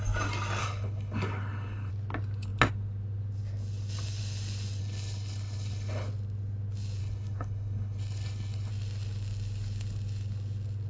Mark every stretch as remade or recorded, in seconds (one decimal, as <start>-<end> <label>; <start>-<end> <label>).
0.0-0.6 recorded; 0.6-1.9 remade; 1.9-4.8 recorded; 4.8-6.1 remade; 6.1-7.0 recorded; 7.0-8.7 remade; 8.7-10.9 recorded